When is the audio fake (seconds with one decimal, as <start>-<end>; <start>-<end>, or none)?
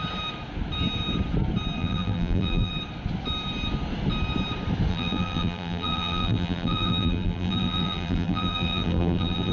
1.8-2.7; 4.9-9.5